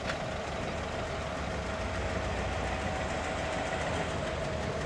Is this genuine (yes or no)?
yes